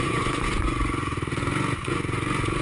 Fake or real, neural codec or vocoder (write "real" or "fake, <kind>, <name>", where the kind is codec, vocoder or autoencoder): fake, vocoder, Vocos